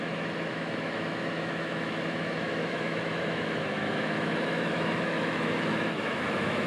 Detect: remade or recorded remade